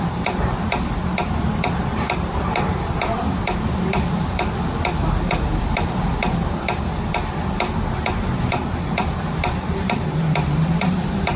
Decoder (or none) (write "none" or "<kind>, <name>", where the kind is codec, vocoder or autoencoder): vocoder, BigVGAN v2